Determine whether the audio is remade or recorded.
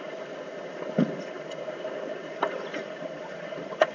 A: recorded